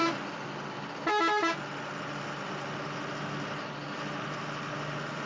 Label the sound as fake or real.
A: real